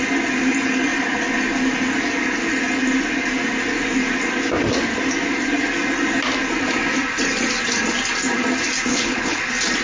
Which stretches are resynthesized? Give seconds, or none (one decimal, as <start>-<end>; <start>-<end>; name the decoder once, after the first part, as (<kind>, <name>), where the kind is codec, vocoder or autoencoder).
8.9-9.4 (codec, HILCodec)